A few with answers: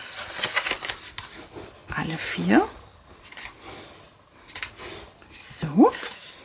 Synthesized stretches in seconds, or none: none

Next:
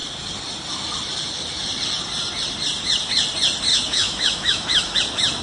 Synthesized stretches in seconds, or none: 3.7-5.0 (autoencoder, DAC-VAE)

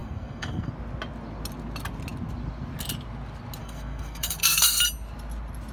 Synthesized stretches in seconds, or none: 0.0-0.7 (codec, SNAC); 3.6-4.8

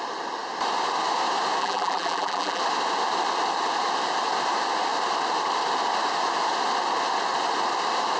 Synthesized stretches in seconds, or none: 1.6-2.6 (vocoder, BigVGAN v2)

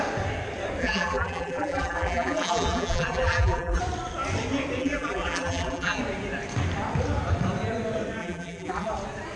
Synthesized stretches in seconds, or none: 0.8-3.8 (vocoder, BigVGAN v2); 4.8-6.0; 8.2-8.9

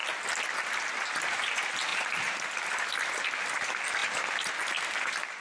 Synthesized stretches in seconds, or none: none

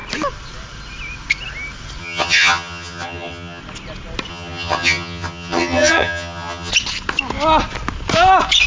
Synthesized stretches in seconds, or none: 2.0-3.6 (vocoder, HiFi-GAN); 4.3-6.7